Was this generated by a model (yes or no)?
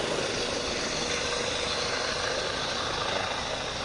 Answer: no